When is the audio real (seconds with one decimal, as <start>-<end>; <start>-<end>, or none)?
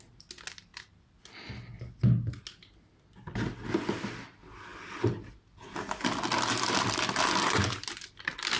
0.0-8.6